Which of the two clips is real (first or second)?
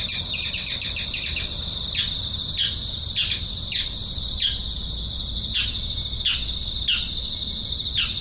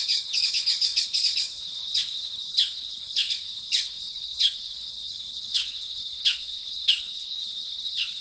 first